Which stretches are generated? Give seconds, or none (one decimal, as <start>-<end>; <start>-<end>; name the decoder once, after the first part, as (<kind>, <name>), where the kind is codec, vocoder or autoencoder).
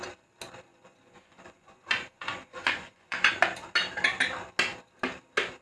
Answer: 0.7-3.3 (vocoder, Vocos)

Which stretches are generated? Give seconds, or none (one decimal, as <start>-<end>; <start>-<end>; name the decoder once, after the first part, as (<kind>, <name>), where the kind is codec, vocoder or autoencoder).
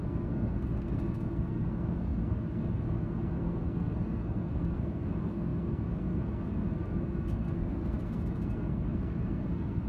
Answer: 0.0-9.9 (codec, SNAC)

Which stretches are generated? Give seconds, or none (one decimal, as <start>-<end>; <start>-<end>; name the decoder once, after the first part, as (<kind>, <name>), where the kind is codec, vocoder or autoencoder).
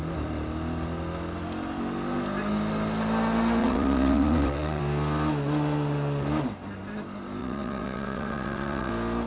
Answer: 3.6-4.8 (vocoder, WaveNeXt); 7.4-8.9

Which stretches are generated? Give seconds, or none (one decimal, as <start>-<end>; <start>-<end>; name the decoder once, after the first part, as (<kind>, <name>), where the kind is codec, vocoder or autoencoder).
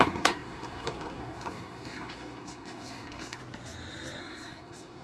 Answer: 0.0-3.4 (codec, SNAC); 4.2-5.0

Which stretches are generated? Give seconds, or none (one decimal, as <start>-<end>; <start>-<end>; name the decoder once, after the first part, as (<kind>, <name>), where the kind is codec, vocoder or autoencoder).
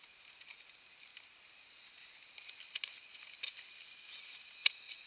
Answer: none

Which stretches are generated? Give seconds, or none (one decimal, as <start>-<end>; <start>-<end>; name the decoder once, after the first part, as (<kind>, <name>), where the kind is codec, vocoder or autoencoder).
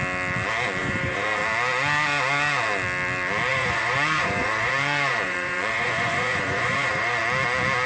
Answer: 0.8-1.4 (vocoder, Vocos); 3.5-7.2